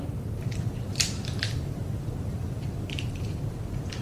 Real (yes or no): no